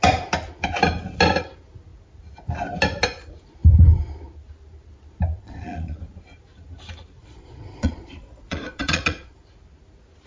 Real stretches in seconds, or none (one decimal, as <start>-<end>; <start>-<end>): 0.0-5.3; 6.0-7.2; 9.4-10.3